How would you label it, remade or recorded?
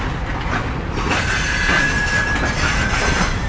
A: recorded